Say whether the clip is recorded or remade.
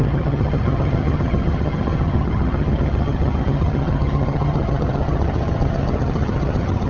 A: remade